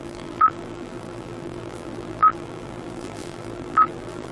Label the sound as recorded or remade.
remade